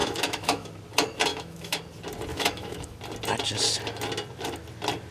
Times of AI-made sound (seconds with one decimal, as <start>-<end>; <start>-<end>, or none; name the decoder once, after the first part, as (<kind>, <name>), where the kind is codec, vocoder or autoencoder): 0.0-0.7 (autoencoder, DAC-VAE); 1.3-1.8; 2.3-3.0